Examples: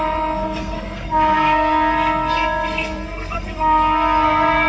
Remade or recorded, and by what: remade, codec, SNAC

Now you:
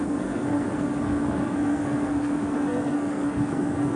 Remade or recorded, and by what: remade, codec, SNAC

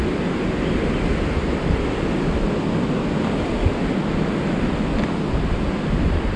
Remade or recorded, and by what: recorded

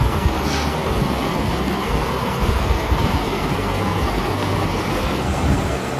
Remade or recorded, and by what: remade, codec, SNAC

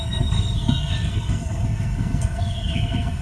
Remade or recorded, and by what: remade, codec, SNAC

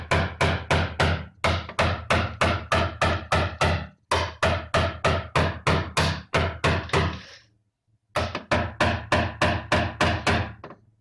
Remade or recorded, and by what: recorded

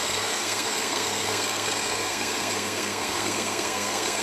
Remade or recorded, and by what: remade, codec, SNAC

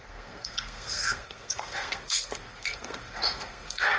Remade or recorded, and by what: remade, codec, SNAC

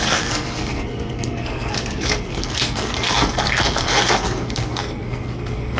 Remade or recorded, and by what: remade, codec, SNAC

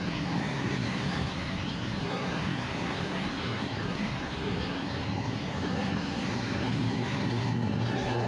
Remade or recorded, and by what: remade, codec, SNAC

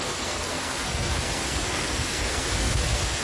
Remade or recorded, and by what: remade, codec, SNAC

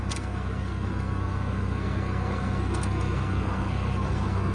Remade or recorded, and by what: remade, codec, SNAC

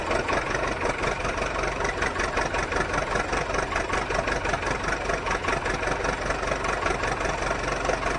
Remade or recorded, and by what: recorded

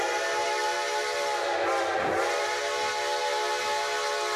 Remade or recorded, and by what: recorded